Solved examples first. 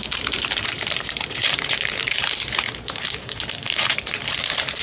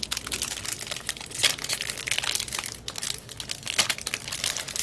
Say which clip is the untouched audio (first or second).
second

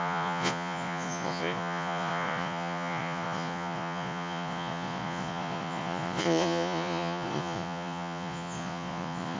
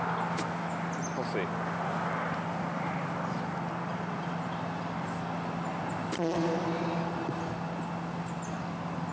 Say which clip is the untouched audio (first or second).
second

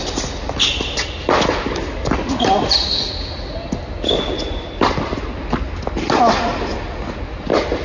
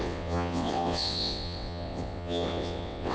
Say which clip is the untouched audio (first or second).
first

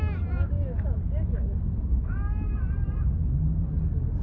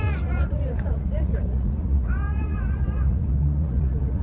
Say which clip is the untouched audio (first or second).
first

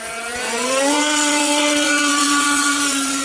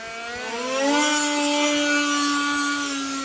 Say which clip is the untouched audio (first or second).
second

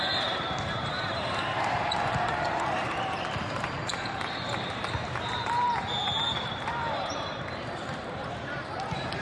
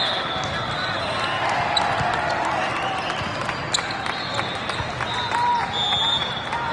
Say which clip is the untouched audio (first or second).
second